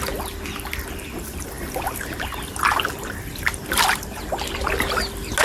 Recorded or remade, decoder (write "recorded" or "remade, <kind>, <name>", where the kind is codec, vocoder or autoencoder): recorded